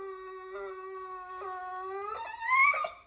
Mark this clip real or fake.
real